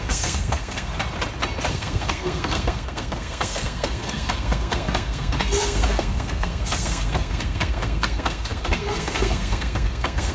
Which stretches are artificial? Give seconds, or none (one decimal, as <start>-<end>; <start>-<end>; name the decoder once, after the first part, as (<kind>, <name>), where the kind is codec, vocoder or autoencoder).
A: 0.0-0.9 (codec, SNAC); 1.7-10.3